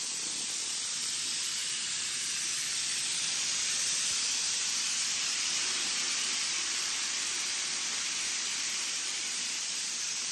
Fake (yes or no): yes